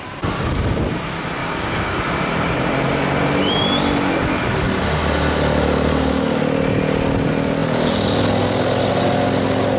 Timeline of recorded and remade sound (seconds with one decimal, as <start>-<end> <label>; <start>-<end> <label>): 0.0-1.4 recorded; 1.4-2.0 remade; 2.0-5.9 recorded; 5.9-6.4 remade; 6.4-9.8 recorded